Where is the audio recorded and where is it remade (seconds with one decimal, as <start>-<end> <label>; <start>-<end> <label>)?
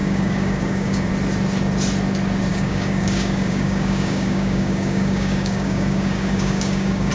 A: 0.0-1.1 remade; 1.1-2.5 recorded; 2.5-7.1 remade